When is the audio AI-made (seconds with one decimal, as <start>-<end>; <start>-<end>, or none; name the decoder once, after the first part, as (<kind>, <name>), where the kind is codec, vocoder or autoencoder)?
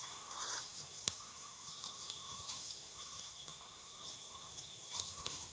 0.0-5.5 (codec, SNAC)